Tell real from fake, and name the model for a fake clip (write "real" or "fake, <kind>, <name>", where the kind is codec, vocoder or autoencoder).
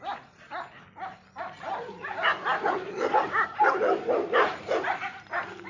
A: real